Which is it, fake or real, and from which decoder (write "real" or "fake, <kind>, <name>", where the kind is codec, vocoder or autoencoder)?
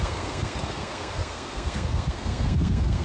fake, codec, SNAC